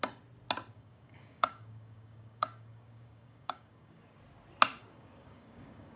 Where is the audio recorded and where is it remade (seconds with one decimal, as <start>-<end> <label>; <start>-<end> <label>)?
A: 0.0-0.7 recorded; 0.7-4.2 remade; 4.2-4.8 recorded; 4.8-6.0 remade